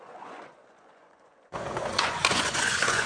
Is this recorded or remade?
remade